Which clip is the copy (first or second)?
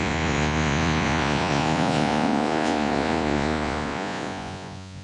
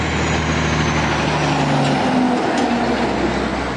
first